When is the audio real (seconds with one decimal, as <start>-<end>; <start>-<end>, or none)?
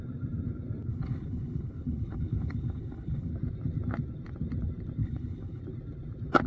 0.0-0.9; 3.3-5.0; 5.6-6.5